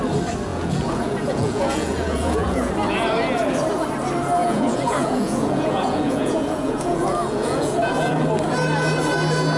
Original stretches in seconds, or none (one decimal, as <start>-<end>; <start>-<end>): 0.0-0.5; 2.7-4.4; 8.1-9.6